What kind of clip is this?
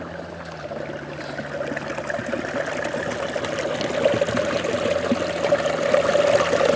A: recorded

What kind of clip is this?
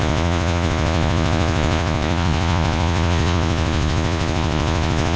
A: remade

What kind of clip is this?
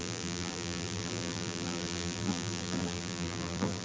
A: remade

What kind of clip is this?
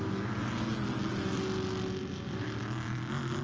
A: recorded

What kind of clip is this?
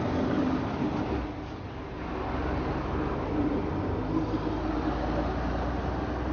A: recorded